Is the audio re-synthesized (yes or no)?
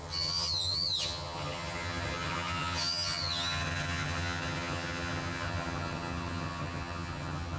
yes